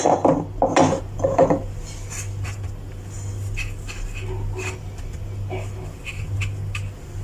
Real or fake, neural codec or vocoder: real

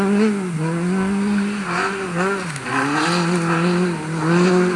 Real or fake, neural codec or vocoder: real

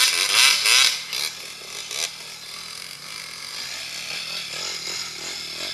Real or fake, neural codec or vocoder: real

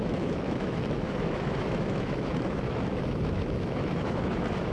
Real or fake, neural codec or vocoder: fake, autoencoder, DAC-VAE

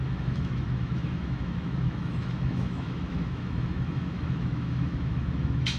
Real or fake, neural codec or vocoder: fake, autoencoder, DAC-VAE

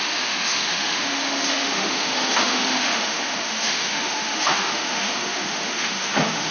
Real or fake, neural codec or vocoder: fake, autoencoder, DAC-VAE